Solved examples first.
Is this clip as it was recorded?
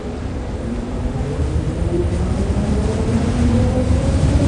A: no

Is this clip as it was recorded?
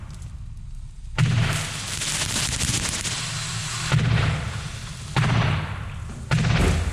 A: yes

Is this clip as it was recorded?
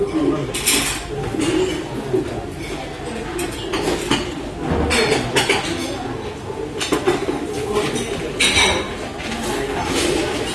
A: yes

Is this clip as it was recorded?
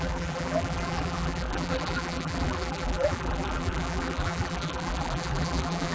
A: no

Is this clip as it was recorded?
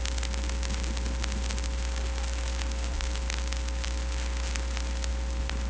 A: yes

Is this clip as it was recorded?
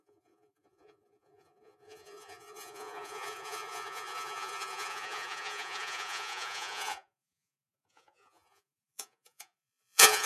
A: no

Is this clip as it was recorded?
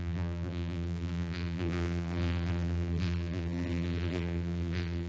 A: no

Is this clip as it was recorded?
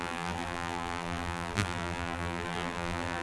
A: no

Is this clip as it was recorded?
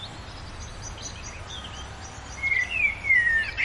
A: yes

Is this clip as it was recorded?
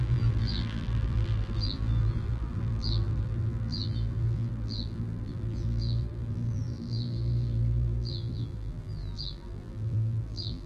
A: no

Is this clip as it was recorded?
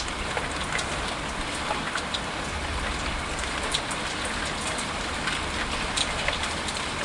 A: yes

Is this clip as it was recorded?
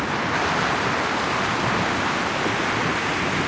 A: yes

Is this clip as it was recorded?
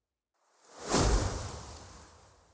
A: yes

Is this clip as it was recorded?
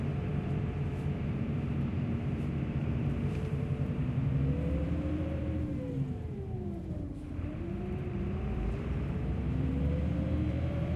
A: no